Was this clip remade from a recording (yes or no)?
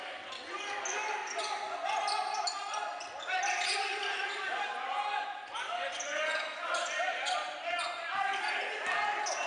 no